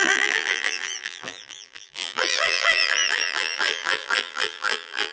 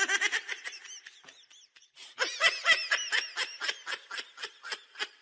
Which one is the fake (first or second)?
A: first